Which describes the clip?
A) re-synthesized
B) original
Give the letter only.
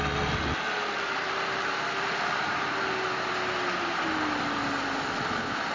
B